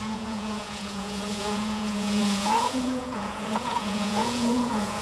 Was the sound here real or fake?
fake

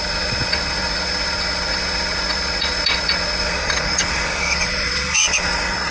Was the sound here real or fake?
fake